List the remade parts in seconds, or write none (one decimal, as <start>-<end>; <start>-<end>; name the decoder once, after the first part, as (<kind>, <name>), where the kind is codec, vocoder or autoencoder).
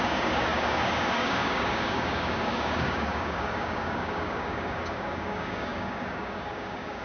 0.0-7.0 (codec, DAC)